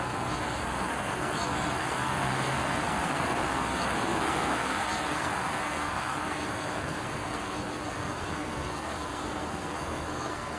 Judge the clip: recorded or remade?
remade